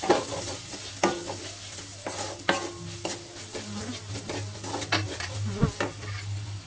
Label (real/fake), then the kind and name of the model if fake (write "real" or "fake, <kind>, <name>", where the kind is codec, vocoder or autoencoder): real